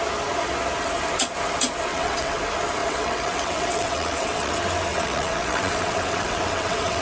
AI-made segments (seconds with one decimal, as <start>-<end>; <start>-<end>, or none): 1.9-2.4; 2.8-4.5; 4.9-7.0